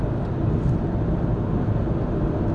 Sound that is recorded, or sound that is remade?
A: recorded